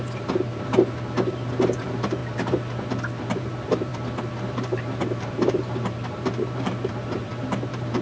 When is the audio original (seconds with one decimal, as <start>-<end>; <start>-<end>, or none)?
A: 0.5-1.8; 2.2-3.2; 3.9-4.5